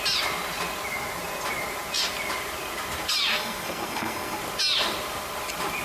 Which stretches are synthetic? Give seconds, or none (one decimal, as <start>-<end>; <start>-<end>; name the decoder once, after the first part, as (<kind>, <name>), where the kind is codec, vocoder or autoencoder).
3.3-4.4 (codec, SNAC)